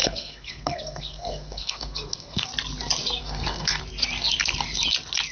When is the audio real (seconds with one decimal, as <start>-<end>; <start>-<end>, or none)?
2.5-3.2; 3.8-5.3